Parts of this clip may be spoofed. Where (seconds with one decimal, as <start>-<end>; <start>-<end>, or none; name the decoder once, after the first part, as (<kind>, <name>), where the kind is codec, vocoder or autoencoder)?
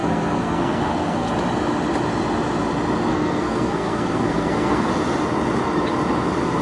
0.0-1.3 (codec, SNAC); 3.1-4.9